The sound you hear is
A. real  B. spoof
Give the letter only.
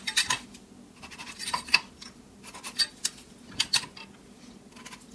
A